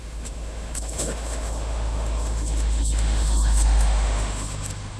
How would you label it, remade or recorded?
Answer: remade